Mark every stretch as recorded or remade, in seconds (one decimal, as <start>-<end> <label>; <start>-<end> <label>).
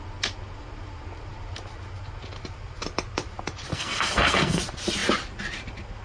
0.0-3.7 recorded; 3.7-4.6 remade; 4.6-6.0 recorded